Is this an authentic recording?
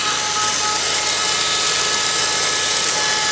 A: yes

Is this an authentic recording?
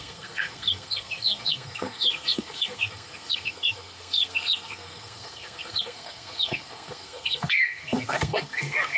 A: no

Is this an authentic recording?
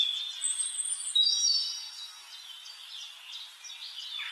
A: yes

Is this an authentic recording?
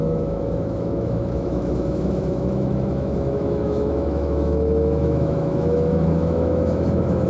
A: no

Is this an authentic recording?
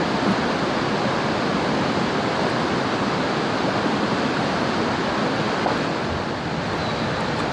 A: yes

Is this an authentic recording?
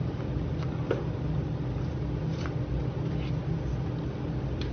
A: yes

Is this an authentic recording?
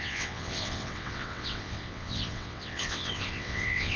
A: no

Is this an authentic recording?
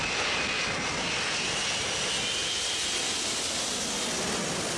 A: yes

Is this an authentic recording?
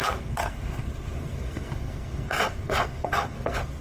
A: no